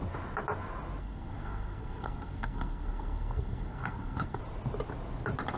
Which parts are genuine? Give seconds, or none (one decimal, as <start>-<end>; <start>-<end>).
0.0-1.0; 4.4-5.6